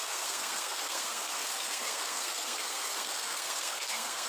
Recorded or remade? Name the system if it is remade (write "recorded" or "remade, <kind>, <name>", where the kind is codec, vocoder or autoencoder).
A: remade, codec, SNAC